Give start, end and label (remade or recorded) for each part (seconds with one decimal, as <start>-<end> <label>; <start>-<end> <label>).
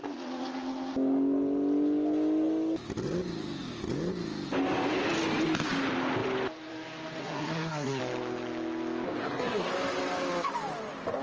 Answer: 0.0-7.2 recorded; 7.2-8.0 remade; 8.0-9.2 recorded; 9.2-9.7 remade; 9.7-11.2 recorded